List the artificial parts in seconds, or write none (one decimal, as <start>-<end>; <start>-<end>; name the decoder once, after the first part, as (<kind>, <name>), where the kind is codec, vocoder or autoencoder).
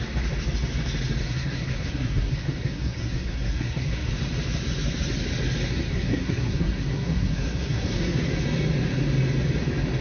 1.2-4.1 (codec, SNAC); 5.9-8.2